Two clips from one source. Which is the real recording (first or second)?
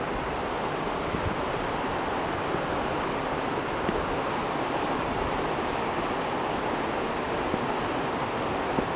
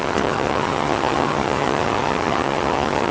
first